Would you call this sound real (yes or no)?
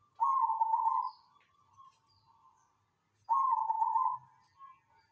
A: yes